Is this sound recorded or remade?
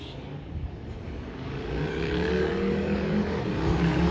remade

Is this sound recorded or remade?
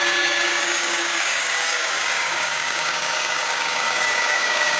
remade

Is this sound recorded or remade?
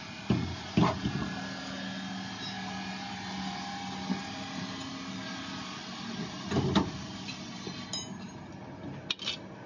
recorded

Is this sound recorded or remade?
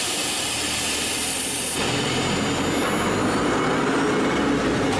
recorded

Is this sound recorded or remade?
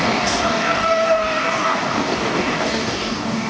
remade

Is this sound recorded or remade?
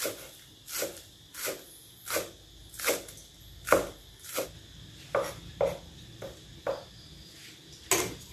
recorded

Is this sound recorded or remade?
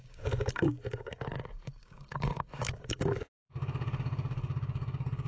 remade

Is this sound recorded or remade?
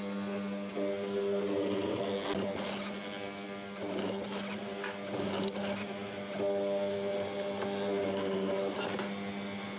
recorded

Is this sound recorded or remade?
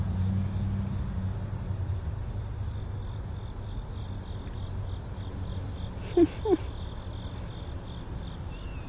recorded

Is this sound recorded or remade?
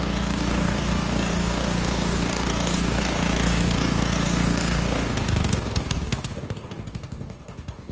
remade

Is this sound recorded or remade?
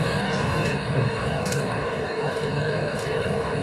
remade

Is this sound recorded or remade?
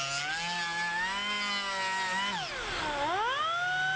recorded